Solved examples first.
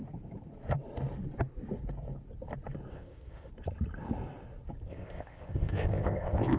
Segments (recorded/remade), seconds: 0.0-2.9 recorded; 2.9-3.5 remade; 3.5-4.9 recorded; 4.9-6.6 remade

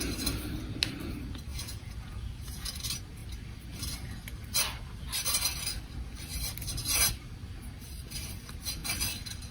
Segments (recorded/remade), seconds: 0.0-1.5 recorded; 1.5-2.8 remade; 2.8-9.5 recorded

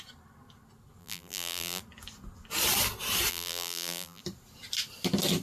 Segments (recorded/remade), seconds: 0.0-1.0 recorded; 1.0-1.8 remade; 1.8-3.3 recorded; 3.3-4.2 remade; 4.2-5.4 recorded

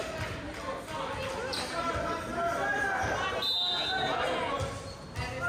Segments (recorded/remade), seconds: 0.0-1.4 recorded; 1.4-1.9 remade; 1.9-5.5 recorded

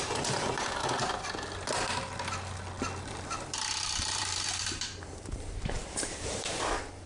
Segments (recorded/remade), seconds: 0.0-0.8 remade; 0.8-3.0 recorded; 3.0-7.1 remade

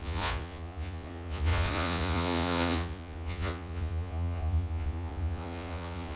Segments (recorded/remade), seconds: 0.0-6.2 remade